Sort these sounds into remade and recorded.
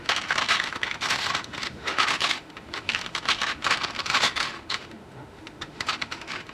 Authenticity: remade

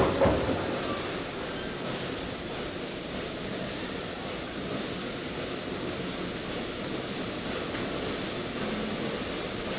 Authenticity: recorded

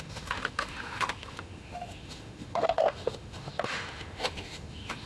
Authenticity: remade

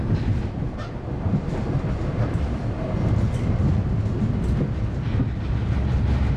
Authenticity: recorded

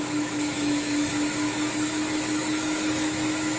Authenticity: remade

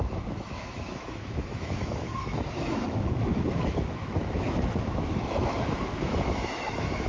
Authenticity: remade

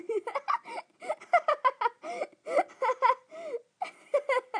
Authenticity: recorded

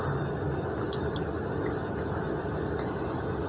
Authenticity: recorded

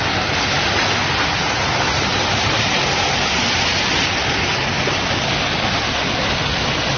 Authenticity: recorded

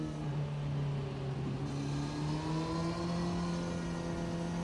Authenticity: recorded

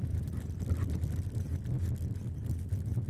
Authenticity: recorded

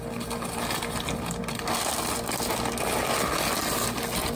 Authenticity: recorded